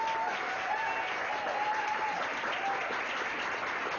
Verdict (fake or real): real